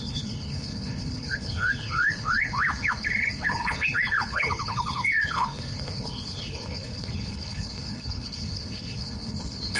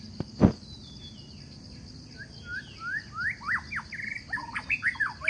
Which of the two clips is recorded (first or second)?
second